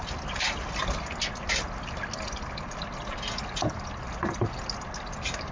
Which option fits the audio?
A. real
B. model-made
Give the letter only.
A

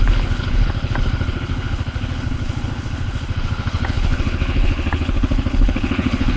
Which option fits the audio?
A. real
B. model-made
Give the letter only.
B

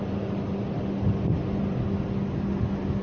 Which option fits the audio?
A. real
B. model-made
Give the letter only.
A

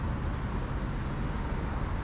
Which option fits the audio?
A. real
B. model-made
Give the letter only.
A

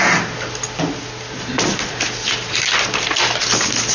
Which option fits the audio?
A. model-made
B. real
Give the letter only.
B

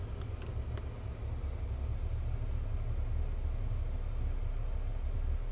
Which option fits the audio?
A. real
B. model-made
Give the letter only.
A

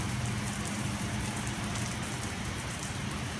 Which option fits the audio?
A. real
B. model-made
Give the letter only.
B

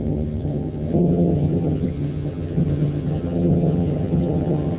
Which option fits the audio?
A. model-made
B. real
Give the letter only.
A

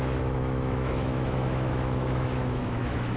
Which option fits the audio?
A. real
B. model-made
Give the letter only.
B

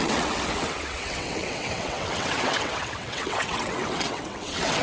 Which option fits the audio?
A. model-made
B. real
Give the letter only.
A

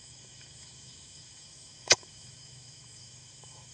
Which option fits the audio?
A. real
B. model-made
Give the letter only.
B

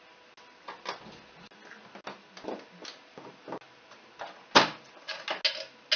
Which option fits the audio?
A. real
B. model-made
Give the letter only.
A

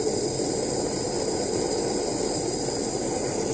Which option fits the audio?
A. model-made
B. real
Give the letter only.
B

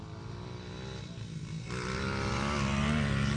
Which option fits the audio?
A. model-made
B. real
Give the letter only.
B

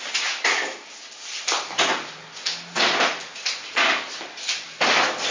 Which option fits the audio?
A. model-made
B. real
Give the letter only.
B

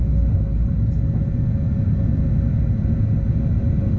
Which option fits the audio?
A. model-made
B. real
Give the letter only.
B